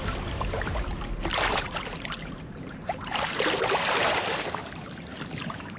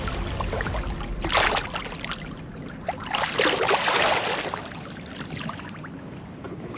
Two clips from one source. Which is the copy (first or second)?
first